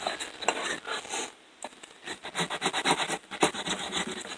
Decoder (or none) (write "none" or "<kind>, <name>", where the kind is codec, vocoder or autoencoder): none